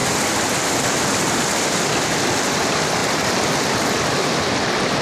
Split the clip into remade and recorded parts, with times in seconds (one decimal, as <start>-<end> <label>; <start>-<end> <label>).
0.0-5.0 recorded